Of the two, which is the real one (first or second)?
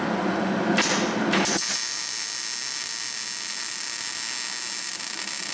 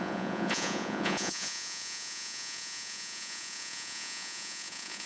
first